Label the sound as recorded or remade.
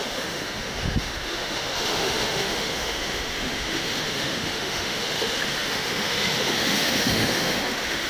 remade